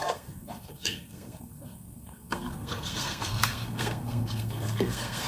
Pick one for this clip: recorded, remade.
remade